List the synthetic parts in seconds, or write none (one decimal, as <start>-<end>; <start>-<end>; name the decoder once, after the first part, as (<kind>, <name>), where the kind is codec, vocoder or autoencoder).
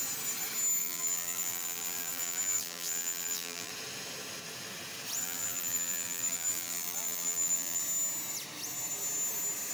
0.8-3.7 (vocoder, BigVGAN v2); 5.2-7.8